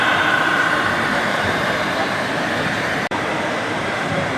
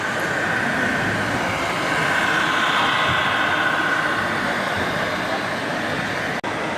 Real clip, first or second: second